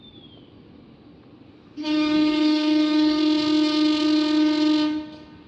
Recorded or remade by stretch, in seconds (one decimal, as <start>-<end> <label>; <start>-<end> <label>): 0.0-1.8 recorded; 1.8-3.2 remade; 3.2-5.5 recorded